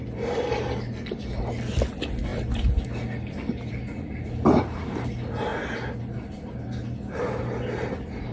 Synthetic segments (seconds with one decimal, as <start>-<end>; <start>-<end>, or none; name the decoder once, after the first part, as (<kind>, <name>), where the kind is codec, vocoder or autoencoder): none